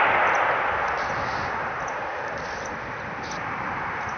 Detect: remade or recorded recorded